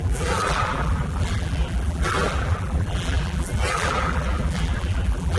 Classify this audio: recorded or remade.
remade